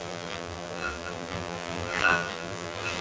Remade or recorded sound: remade